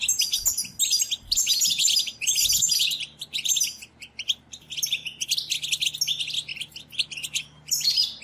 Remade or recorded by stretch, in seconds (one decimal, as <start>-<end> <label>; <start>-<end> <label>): 0.0-1.5 recorded; 1.5-5.3 remade; 5.3-6.5 recorded; 6.5-8.2 remade